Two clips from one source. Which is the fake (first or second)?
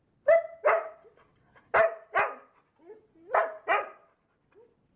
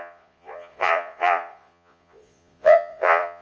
second